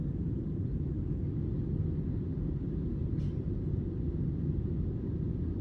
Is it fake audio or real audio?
real